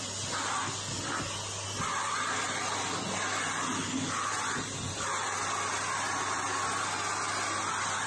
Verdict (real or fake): real